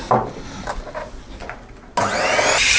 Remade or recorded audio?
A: recorded